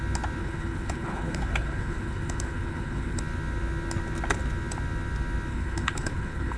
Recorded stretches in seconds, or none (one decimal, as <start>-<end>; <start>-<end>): 0.0-0.4; 3.2-5.5